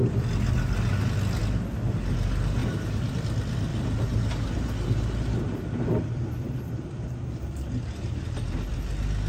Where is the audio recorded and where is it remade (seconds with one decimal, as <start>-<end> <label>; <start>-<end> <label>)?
0.0-2.6 recorded; 2.6-3.1 remade; 3.1-3.7 recorded; 3.7-7.7 remade; 7.7-9.3 recorded